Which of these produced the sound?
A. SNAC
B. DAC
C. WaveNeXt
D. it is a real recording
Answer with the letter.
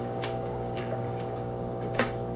B